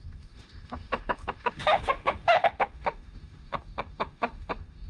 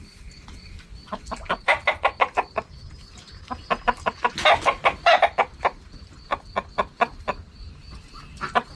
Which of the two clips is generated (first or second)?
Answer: first